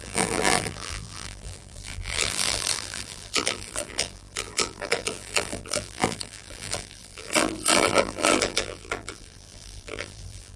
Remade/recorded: remade